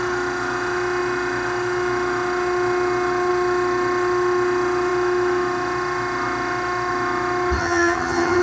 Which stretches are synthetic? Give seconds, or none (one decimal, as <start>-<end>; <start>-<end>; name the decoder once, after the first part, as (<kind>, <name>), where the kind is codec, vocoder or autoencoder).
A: 7.6-8.4 (vocoder, HiFi-GAN)